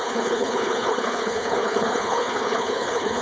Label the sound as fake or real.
fake